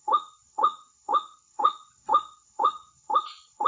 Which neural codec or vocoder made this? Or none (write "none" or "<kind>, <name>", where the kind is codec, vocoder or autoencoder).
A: vocoder, WaveNeXt